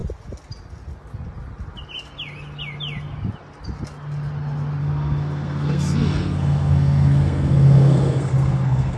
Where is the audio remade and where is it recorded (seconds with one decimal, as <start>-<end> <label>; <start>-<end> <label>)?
0.0-4.8 recorded; 4.8-9.0 remade